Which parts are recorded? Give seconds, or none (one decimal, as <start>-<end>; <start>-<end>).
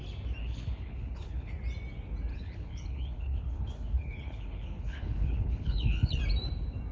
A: 0.0-0.4; 1.5-2.3; 6.2-6.9